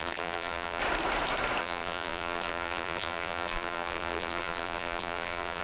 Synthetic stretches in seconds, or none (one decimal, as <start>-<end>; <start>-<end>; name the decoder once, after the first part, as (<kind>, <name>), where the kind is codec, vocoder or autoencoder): 0.0-0.8 (vocoder, BigVGAN v2); 1.6-5.6